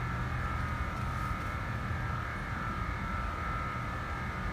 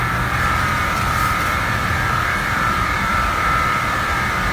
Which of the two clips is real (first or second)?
first